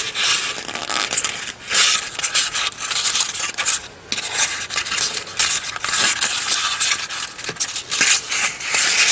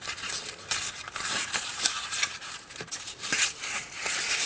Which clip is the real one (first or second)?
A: first